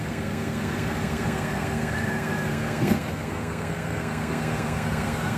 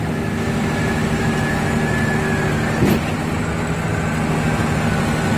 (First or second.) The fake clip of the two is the first